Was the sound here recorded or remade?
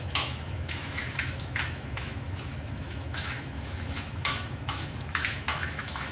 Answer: remade